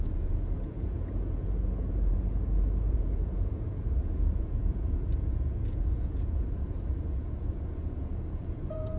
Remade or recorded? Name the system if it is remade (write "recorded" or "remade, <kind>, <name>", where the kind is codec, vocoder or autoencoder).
remade, vocoder, Vocos